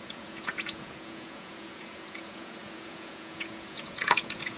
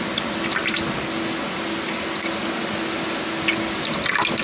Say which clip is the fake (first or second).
first